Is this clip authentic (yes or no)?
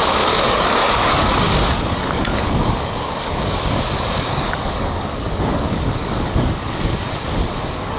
no